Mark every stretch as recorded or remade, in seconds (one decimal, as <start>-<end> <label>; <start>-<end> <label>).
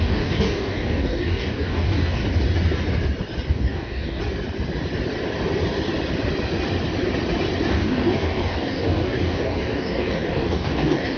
0.0-2.2 remade; 2.2-3.5 recorded; 3.5-4.2 remade; 4.2-7.7 recorded; 7.7-11.2 remade